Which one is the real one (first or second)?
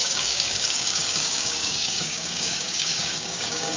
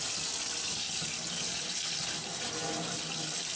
second